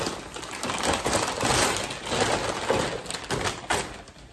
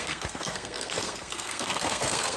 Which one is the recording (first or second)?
first